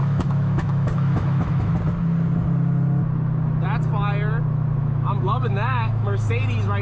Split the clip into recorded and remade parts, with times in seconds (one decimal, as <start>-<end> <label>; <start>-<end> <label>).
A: 0.0-1.7 remade; 1.7-4.8 recorded; 4.8-6.3 remade; 6.3-6.8 recorded